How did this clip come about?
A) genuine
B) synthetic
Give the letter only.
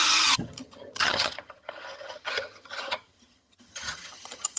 B